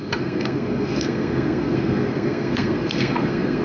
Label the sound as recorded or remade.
remade